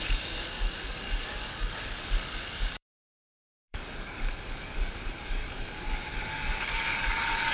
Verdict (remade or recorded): remade